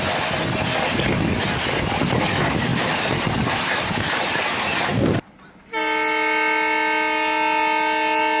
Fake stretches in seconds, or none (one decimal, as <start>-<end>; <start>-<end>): none